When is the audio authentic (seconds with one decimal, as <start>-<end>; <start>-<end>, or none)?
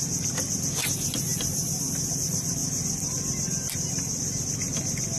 0.0-5.2